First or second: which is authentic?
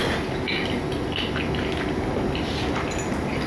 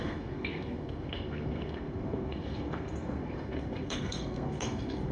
first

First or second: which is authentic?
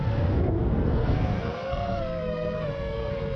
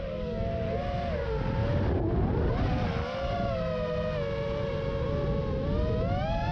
second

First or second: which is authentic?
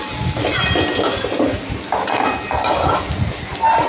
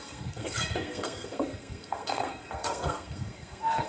first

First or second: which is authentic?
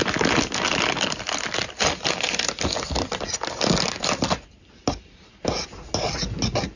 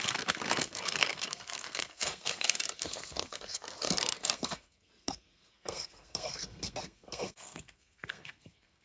first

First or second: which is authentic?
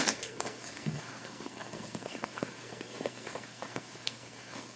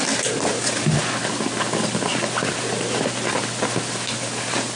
second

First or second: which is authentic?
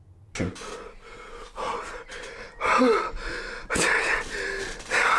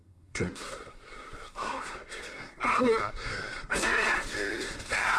first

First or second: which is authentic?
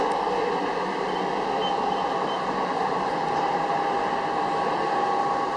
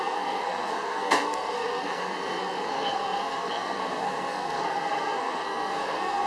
first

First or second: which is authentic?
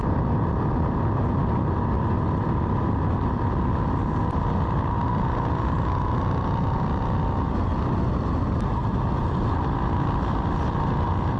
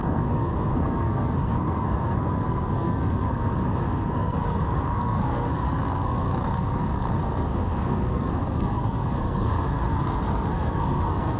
first